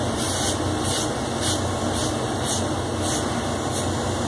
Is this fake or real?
real